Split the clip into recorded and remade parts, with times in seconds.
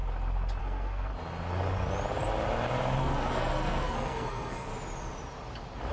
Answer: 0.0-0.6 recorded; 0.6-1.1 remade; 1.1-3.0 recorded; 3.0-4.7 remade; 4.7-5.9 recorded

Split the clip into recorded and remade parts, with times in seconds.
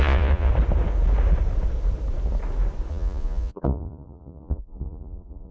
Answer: 0.0-0.5 remade; 0.5-2.9 recorded; 2.9-5.5 remade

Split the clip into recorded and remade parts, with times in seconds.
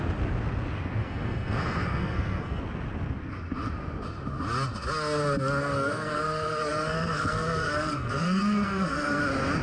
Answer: 0.0-1.0 recorded; 1.0-2.6 remade; 2.6-5.6 recorded; 5.6-9.2 remade; 9.2-9.6 recorded